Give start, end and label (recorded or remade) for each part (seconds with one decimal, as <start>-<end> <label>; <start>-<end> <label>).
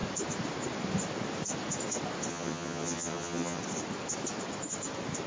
0.0-2.3 recorded; 2.3-3.6 remade; 3.6-5.3 recorded